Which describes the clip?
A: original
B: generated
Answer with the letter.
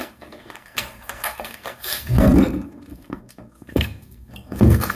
B